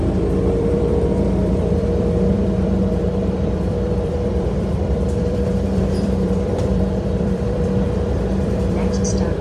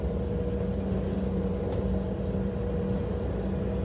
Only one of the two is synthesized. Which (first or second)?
first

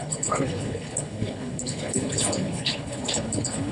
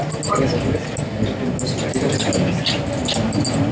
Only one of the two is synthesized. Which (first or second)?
first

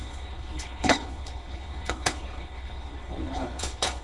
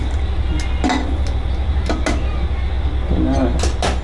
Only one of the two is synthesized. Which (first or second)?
first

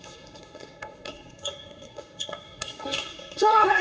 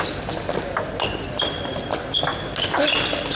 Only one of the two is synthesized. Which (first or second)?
first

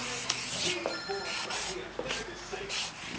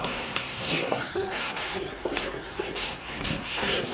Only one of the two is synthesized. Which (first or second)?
second